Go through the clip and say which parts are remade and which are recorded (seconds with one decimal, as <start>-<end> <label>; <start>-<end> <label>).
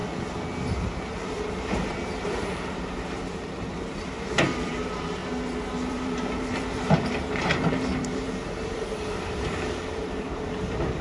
0.0-1.1 recorded; 1.1-5.2 remade; 5.2-5.9 recorded; 5.9-11.0 remade